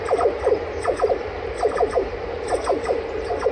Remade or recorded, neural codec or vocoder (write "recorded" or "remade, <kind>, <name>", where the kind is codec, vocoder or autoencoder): remade, vocoder, BigVGAN v2